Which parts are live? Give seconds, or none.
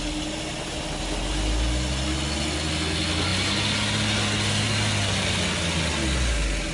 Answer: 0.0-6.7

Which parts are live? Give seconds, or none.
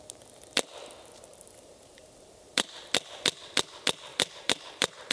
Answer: 0.0-1.3; 2.9-4.1